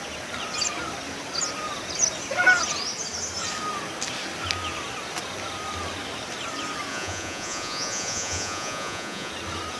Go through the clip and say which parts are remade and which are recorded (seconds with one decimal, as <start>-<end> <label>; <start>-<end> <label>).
0.0-6.9 recorded; 6.9-9.3 remade; 9.3-9.8 recorded